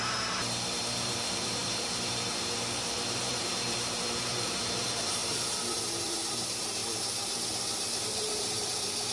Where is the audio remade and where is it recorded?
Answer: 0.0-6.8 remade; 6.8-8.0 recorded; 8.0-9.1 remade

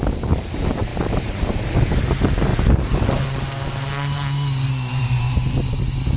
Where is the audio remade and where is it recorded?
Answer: 0.0-2.5 remade; 2.5-5.0 recorded; 5.0-6.2 remade

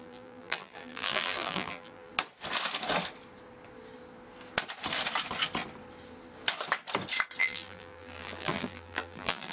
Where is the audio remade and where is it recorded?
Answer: 0.0-2.1 remade; 2.1-7.4 recorded; 7.4-9.5 remade

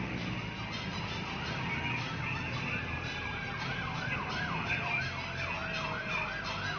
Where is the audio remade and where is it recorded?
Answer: 0.0-0.9 recorded; 0.9-5.0 remade; 5.0-6.8 recorded